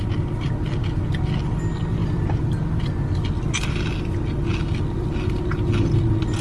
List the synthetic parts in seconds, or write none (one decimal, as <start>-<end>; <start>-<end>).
none